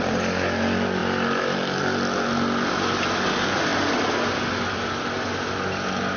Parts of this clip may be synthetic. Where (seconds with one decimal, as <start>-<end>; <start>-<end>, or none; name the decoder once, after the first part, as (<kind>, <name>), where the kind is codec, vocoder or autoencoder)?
none